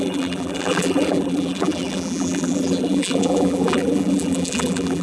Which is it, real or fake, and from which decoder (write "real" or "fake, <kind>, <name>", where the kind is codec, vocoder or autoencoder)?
fake, vocoder, BigVGAN v2